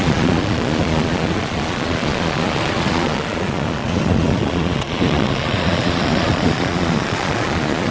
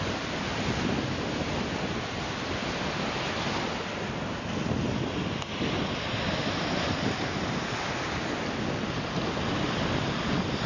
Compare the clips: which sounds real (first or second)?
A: second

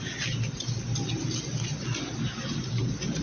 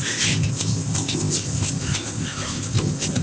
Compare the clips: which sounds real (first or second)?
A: first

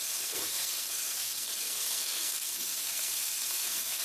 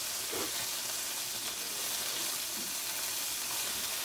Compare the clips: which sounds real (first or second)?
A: second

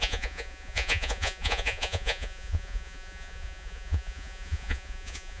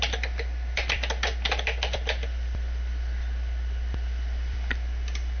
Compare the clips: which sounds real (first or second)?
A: second